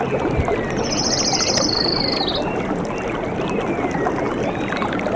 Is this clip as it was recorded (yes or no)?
yes